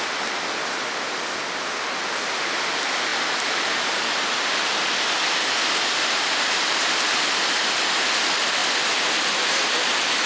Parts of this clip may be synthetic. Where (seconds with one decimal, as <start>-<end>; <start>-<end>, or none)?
none